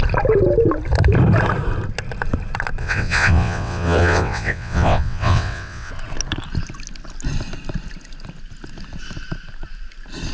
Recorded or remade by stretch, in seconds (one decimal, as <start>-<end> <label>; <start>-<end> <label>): 0.0-2.8 recorded; 2.8-5.9 remade; 5.9-10.3 recorded